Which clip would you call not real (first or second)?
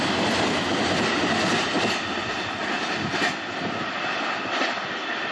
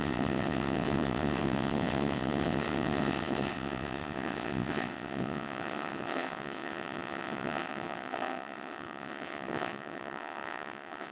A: second